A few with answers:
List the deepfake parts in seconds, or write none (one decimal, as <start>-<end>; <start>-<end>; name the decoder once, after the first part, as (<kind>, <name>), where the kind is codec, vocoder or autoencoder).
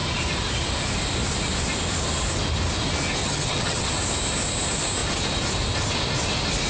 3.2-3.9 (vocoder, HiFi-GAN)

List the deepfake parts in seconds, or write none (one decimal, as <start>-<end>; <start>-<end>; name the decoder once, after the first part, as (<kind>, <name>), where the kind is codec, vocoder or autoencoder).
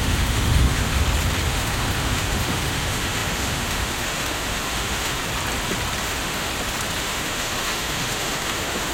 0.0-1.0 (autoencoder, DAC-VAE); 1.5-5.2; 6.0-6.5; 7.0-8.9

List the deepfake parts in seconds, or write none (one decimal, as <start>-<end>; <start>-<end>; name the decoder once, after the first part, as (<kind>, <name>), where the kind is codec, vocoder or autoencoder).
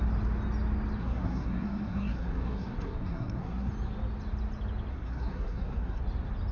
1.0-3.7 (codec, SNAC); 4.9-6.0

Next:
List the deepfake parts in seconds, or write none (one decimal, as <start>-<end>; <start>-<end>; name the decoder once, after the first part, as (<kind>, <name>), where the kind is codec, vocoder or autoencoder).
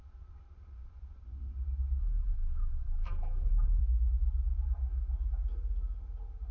2.0-3.8 (vocoder, BigVGAN v2)